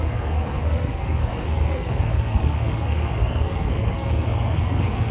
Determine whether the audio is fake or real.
fake